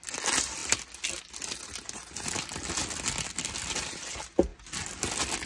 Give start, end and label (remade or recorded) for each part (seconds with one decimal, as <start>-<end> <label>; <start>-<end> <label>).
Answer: 0.0-5.5 recorded

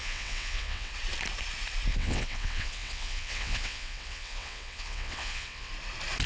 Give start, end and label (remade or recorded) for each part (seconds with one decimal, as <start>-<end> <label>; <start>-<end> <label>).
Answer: 0.0-0.9 remade; 0.9-1.9 recorded; 1.9-5.7 remade; 5.7-6.3 recorded

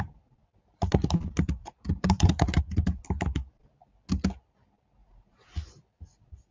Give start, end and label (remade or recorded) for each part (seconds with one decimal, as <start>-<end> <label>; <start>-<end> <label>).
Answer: 0.0-1.6 recorded; 1.6-3.0 remade; 3.0-5.0 recorded; 5.0-5.7 remade; 5.7-6.5 recorded

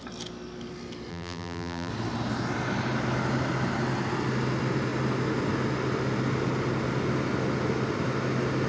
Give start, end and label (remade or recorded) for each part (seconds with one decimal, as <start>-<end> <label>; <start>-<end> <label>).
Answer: 0.0-1.1 recorded; 1.1-1.9 remade; 1.9-8.7 recorded

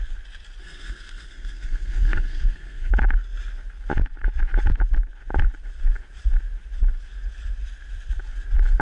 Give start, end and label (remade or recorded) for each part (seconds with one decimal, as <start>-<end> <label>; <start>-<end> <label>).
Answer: 0.0-0.6 recorded; 0.6-2.9 remade; 2.9-8.8 recorded

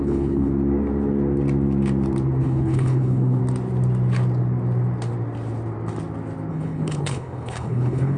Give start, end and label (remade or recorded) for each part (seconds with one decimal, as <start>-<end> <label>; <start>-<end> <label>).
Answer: 0.0-0.5 remade; 0.5-2.4 recorded; 2.4-3.4 remade; 3.4-6.5 recorded; 6.5-8.2 remade

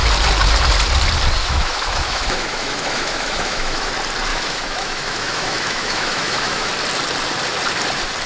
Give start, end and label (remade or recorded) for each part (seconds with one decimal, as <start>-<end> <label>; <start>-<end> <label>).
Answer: 0.0-1.4 recorded; 1.4-3.9 remade; 3.9-4.3 recorded; 4.3-6.7 remade; 6.7-8.3 recorded

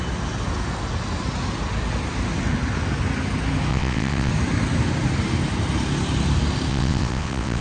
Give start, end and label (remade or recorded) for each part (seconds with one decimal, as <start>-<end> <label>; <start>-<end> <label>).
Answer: 0.0-3.7 recorded; 3.7-4.3 remade; 4.3-6.7 recorded; 6.7-7.6 remade